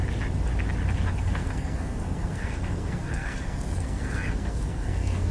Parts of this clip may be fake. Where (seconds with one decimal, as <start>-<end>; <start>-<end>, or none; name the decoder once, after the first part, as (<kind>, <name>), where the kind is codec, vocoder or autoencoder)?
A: 1.2-5.3 (codec, SNAC)